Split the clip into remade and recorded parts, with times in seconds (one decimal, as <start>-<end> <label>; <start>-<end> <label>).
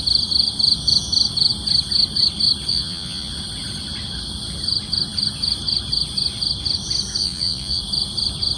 0.0-2.7 recorded; 2.7-3.3 remade; 3.3-7.2 recorded; 7.2-7.8 remade; 7.8-8.6 recorded